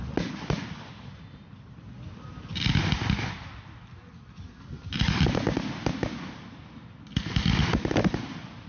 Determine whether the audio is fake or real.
real